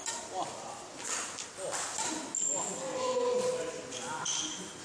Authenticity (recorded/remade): recorded